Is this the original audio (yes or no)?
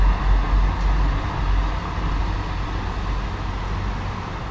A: yes